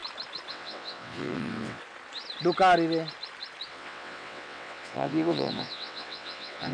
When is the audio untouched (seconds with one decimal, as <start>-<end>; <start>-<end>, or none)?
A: 0.0-0.5; 1.8-3.7